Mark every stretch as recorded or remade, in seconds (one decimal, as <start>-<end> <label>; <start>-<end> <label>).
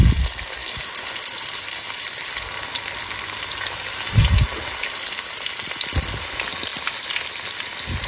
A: 0.0-8.1 recorded